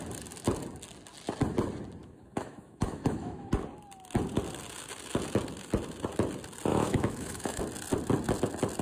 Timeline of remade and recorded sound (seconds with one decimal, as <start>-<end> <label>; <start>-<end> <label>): 0.0-2.0 recorded; 2.0-3.5 remade; 3.5-6.7 recorded; 6.7-7.6 remade; 7.6-8.8 recorded